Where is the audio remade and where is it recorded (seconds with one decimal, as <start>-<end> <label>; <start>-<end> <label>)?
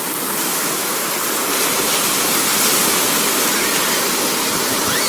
0.0-0.5 recorded; 0.5-1.1 remade; 1.1-5.1 recorded